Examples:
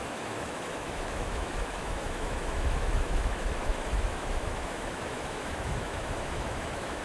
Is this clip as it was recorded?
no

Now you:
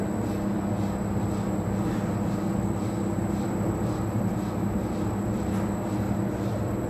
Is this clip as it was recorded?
yes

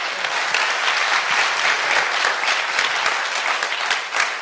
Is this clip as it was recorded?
yes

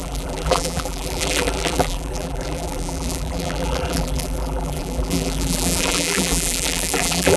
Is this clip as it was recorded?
no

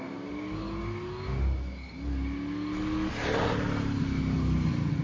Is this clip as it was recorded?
yes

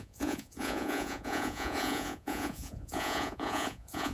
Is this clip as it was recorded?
no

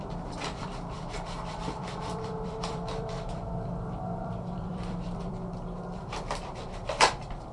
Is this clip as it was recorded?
no